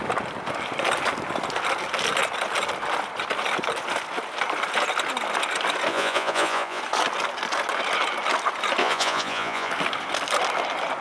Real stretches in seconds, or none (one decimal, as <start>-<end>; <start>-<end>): 0.0-5.9; 6.8-8.8; 9.7-11.0